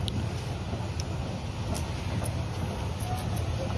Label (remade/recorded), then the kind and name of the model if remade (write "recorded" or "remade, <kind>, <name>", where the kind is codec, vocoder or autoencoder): recorded